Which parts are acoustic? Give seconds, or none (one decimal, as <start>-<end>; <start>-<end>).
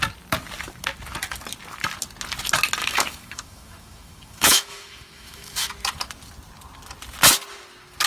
0.0-2.8; 5.7-8.1